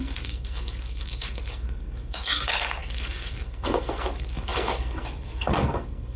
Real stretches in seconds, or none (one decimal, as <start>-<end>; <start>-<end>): none